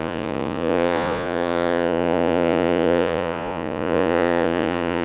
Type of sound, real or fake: fake